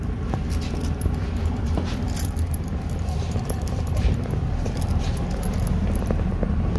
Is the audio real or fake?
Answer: fake